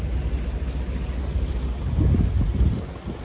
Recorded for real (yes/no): yes